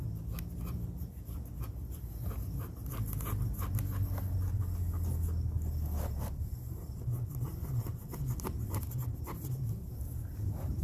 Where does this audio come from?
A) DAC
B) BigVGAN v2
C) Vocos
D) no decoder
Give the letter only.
D